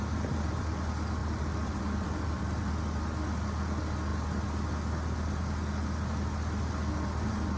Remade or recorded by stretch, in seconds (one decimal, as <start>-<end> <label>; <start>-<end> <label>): 0.0-1.2 recorded; 1.2-2.7 remade; 2.7-7.6 recorded